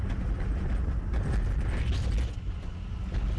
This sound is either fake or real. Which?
real